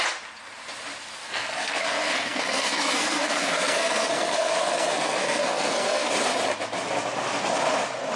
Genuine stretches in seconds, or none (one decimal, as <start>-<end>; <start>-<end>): 0.0-1.2; 6.1-8.2